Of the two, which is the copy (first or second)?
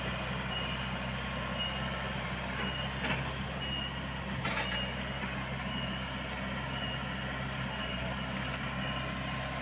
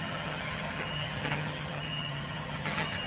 second